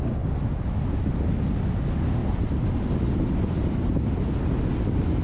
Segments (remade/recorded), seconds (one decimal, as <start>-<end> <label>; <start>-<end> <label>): 0.0-2.2 recorded; 2.2-4.5 remade; 4.5-5.2 recorded